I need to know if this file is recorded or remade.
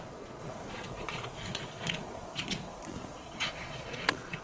remade